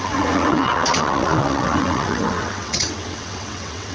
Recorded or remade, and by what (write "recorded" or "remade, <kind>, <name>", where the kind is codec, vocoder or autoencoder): remade, vocoder, WaveNeXt